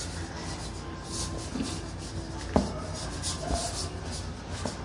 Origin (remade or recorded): recorded